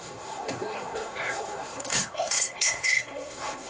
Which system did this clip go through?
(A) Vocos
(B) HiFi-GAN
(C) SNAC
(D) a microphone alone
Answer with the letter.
C